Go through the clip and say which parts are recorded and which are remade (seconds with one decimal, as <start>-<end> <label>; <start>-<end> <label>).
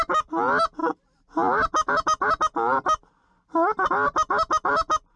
0.0-5.2 recorded